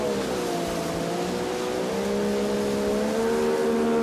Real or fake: real